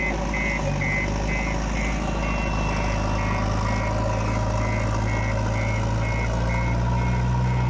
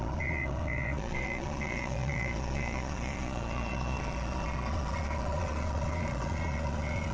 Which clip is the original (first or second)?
first